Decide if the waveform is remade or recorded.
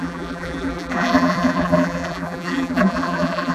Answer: remade